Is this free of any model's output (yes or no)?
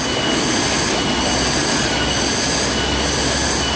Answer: yes